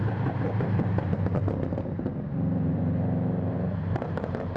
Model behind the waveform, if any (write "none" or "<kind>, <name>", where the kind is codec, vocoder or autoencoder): vocoder, BigVGAN v2